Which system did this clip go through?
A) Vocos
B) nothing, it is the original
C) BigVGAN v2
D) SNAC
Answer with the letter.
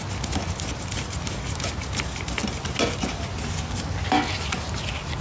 B